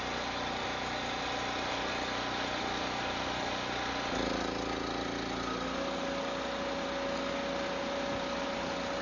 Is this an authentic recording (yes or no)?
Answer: yes